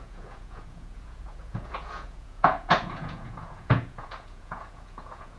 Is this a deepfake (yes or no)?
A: yes